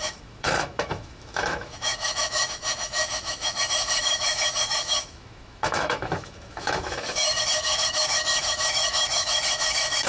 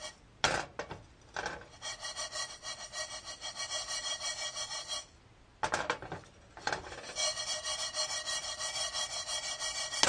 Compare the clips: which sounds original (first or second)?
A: second